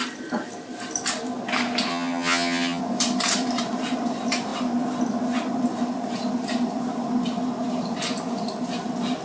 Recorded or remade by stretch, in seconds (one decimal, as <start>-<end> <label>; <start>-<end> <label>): 0.0-1.9 recorded; 1.9-2.8 remade; 2.8-9.2 recorded